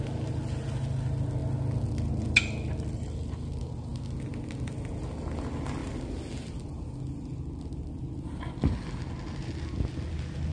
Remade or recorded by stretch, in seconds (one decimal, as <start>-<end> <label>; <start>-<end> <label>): 0.0-10.5 recorded